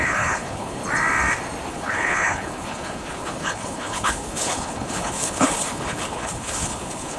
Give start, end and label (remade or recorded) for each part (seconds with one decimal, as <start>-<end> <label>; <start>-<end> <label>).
0.0-0.8 remade; 0.8-1.7 recorded; 1.7-7.2 remade